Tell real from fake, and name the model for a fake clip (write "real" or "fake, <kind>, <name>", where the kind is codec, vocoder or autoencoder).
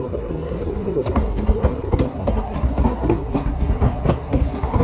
fake, codec, SNAC